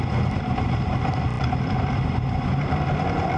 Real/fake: fake